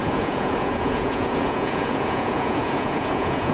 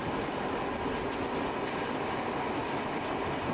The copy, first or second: first